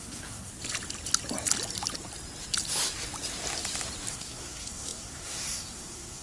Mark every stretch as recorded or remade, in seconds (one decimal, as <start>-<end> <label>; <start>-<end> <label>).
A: 0.0-0.5 remade; 0.5-4.1 recorded; 4.1-6.2 remade